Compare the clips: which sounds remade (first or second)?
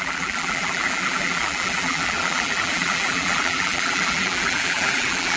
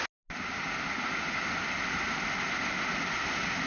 first